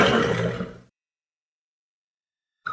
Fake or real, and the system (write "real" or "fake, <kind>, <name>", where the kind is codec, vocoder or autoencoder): fake, vocoder, BigVGAN v2